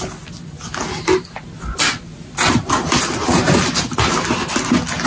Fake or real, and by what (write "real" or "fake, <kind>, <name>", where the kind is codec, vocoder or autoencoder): real